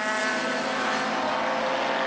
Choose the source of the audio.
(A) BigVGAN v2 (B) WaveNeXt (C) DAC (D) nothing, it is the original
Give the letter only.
D